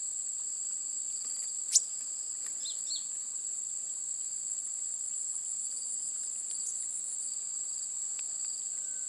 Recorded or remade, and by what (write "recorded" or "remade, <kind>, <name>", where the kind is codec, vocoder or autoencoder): recorded